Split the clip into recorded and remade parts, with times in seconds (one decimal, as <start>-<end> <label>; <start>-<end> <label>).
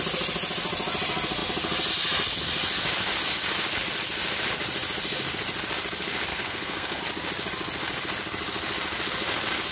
0.0-6.3 recorded; 6.3-7.0 remade; 7.0-9.7 recorded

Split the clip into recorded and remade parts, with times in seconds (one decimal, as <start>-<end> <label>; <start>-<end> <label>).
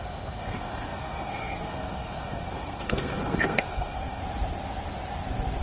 0.0-4.2 remade; 4.2-5.6 recorded